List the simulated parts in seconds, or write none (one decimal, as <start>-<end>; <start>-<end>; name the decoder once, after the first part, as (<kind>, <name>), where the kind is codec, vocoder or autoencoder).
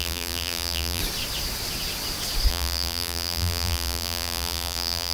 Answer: 0.0-1.0 (vocoder, BigVGAN v2); 2.5-5.1